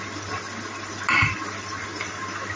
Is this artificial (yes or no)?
no